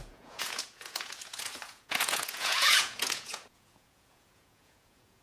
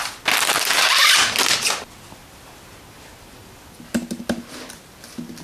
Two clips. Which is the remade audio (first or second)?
first